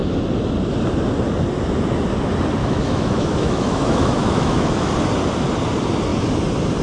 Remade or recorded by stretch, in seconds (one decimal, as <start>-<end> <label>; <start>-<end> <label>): 0.0-2.6 recorded; 2.6-4.9 remade; 4.9-6.8 recorded